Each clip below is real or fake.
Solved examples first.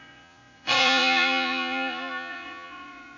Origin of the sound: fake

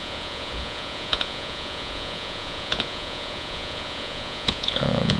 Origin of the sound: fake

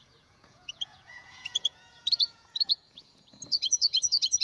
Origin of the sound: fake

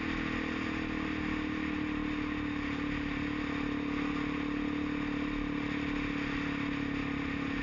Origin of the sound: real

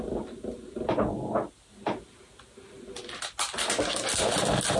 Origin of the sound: real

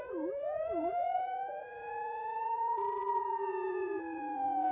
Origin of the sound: fake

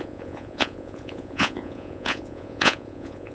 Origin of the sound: fake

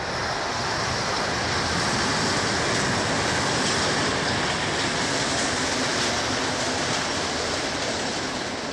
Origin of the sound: real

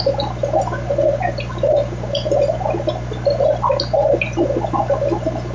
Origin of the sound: real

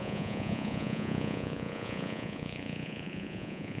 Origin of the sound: fake